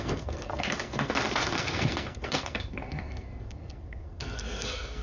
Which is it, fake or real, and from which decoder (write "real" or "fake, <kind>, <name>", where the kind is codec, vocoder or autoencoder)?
fake, codec, SNAC